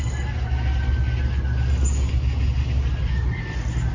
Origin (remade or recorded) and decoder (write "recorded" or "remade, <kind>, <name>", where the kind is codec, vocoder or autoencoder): recorded